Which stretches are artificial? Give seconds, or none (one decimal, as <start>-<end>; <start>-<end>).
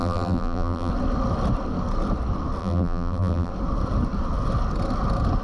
0.0-0.9; 2.6-3.5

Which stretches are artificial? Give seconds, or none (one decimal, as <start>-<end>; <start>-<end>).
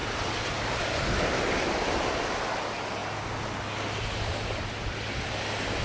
0.0-0.8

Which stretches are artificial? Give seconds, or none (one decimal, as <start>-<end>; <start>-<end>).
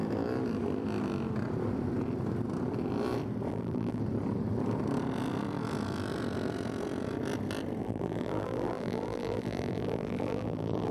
3.5-4.0; 7.8-10.9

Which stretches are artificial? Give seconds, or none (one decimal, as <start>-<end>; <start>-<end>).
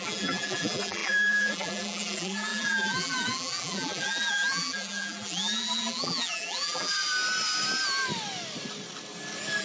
0.0-6.9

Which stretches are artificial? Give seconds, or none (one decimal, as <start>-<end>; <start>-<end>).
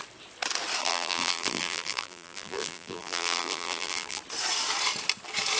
0.8-4.2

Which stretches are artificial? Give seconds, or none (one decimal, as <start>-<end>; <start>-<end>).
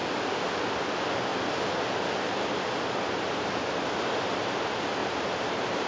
5.0-5.9